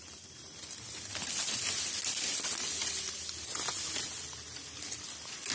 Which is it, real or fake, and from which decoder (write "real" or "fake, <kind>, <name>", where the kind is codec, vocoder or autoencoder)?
real